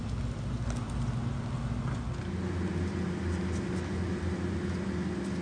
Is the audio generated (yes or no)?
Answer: no